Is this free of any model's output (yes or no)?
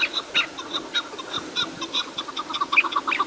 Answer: yes